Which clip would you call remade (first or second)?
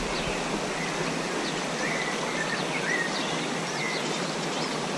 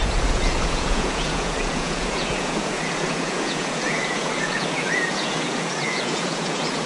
second